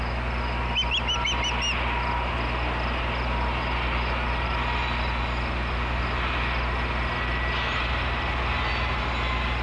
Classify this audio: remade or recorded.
recorded